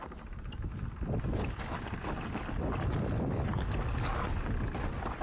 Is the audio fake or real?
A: real